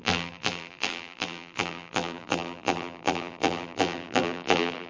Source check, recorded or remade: remade